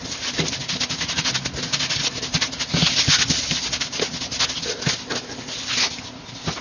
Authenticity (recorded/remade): recorded